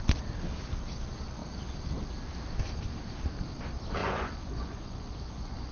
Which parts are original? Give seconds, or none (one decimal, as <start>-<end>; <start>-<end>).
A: 0.0-4.0